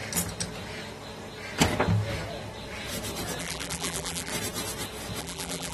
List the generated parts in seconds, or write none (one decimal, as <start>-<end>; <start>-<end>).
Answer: 3.4-4.3; 5.2-5.7